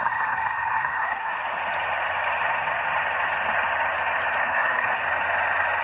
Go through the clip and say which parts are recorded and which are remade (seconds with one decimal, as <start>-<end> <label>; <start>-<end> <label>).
0.0-1.3 remade; 1.3-4.4 recorded; 4.4-5.0 remade; 5.0-5.8 recorded